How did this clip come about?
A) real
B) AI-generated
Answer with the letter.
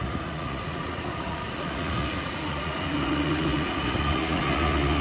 B